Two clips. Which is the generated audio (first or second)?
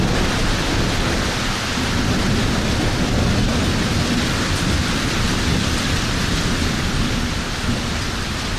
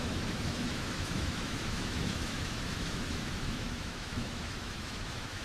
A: second